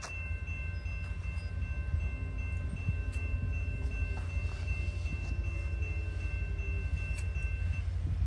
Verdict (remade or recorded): recorded